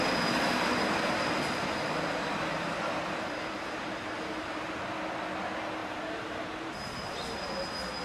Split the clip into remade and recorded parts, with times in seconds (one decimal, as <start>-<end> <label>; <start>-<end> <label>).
0.0-2.5 recorded; 2.5-4.9 remade; 4.9-5.8 recorded; 5.8-7.5 remade; 7.5-8.0 recorded